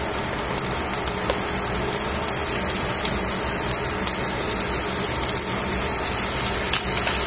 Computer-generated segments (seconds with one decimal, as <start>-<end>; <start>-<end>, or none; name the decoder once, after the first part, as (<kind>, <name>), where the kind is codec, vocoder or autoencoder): none